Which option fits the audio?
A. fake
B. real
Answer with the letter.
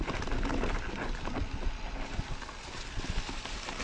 B